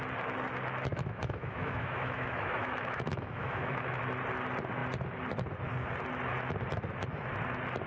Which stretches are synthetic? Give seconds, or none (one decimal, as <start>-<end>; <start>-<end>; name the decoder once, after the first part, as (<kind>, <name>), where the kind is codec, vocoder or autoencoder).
0.9-4.0 (autoencoder, DAC-VAE)